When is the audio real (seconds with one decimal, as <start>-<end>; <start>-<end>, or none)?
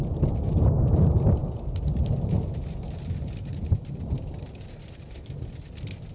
0.0-6.1